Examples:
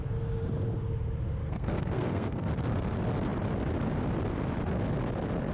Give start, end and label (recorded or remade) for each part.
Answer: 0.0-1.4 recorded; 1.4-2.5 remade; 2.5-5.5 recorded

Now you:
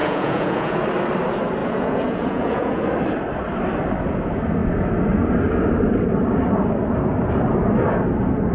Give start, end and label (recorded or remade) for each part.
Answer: 0.0-0.8 remade; 0.8-1.6 recorded; 1.6-2.8 remade; 2.8-8.5 recorded

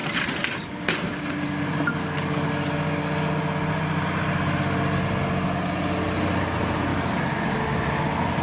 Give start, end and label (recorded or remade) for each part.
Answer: 0.0-2.0 recorded; 2.0-2.5 remade; 2.5-6.9 recorded; 6.9-7.6 remade; 7.6-8.4 recorded

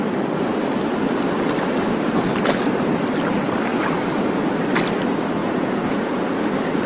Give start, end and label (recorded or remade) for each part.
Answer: 0.0-5.4 recorded; 5.4-6.2 remade; 6.2-6.9 recorded